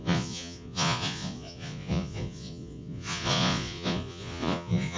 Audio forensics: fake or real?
fake